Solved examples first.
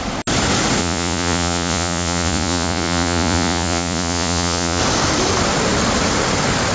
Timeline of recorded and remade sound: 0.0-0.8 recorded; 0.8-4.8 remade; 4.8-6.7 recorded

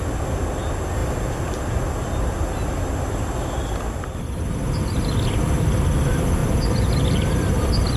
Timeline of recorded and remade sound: 0.0-8.0 recorded

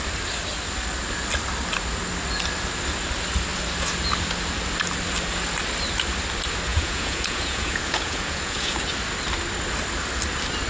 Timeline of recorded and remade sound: 0.0-6.7 recorded; 6.7-8.8 remade; 8.8-10.7 recorded

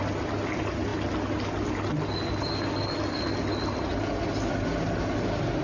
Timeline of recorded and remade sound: 0.0-5.6 recorded

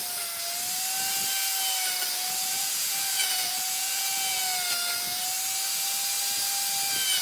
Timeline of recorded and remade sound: 0.0-2.4 recorded; 2.4-4.4 remade; 4.4-7.2 recorded